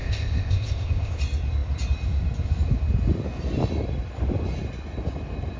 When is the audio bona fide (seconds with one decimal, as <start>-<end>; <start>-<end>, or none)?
1.2-5.6